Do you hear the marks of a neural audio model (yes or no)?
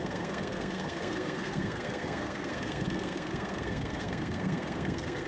yes